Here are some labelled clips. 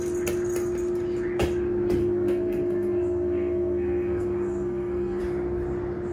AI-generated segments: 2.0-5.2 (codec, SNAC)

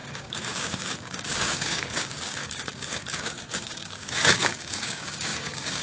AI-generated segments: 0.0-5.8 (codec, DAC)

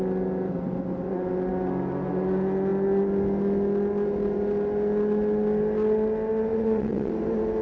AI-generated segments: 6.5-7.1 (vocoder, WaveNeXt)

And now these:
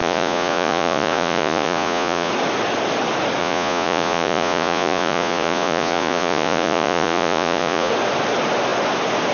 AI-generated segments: 0.0-2.3 (vocoder, Vocos); 3.4-7.9

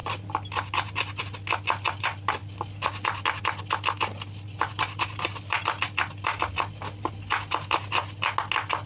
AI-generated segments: none